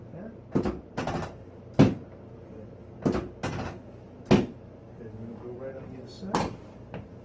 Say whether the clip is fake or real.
real